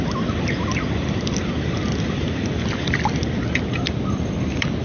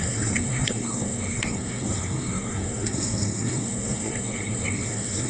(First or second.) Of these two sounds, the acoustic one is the first